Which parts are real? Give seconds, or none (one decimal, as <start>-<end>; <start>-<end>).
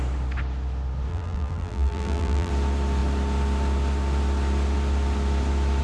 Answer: 0.0-1.1; 2.5-5.8